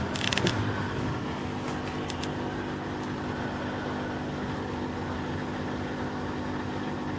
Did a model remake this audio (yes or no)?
no